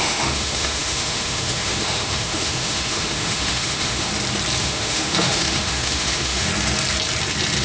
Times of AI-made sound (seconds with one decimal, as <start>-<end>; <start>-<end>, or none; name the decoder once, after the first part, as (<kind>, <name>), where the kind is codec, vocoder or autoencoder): 0.0-4.1 (autoencoder, DAC-VAE); 4.6-6.5